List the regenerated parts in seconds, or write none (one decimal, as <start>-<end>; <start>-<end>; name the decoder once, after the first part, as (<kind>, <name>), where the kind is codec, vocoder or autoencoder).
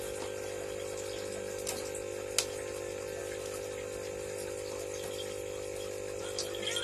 none